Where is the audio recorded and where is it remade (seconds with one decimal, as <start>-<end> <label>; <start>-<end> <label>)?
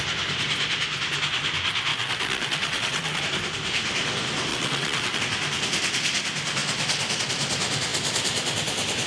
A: 0.0-1.9 recorded; 1.9-3.2 remade; 3.2-4.5 recorded; 4.5-5.2 remade; 5.2-9.1 recorded